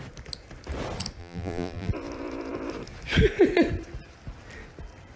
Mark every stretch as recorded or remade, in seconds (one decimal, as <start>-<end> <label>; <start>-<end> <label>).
0.0-1.2 recorded; 1.2-1.9 remade; 1.9-5.2 recorded